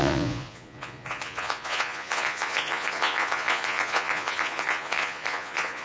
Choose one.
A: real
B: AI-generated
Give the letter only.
B